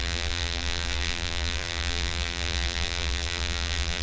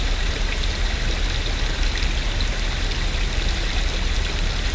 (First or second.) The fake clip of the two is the first